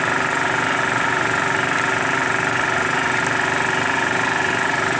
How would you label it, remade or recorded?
remade